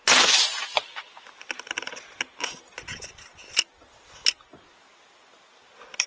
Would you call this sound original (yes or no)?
yes